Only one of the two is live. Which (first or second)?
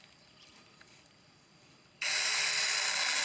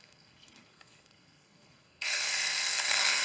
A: first